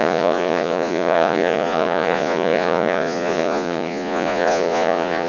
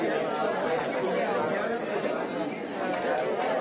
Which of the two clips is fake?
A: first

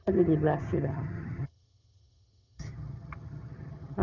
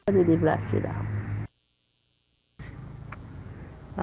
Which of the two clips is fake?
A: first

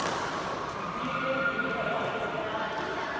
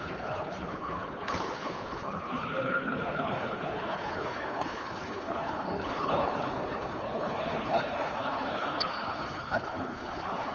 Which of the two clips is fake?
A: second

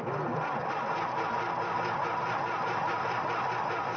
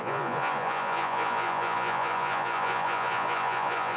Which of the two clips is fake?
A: second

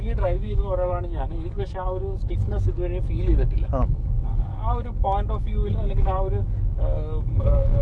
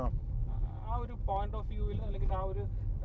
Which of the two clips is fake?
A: first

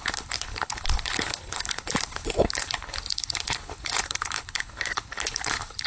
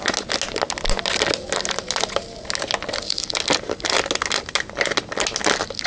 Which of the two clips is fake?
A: first